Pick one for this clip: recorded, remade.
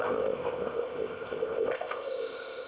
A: remade